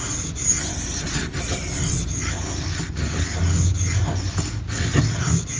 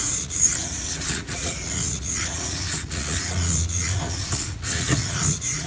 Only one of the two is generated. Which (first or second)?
second